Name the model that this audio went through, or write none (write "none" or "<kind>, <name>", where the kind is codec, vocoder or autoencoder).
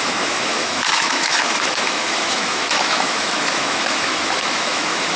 autoencoder, DAC-VAE